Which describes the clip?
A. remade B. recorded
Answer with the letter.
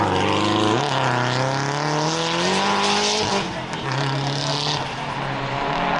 B